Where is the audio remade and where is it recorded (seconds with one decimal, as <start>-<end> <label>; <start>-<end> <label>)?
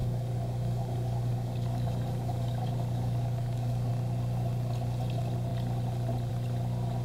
0.0-3.9 remade; 3.9-7.0 recorded